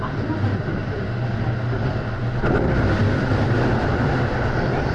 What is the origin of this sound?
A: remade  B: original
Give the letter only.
B